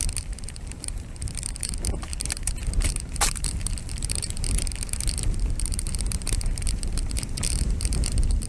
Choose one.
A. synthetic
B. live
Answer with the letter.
A